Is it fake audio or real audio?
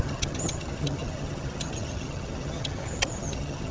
fake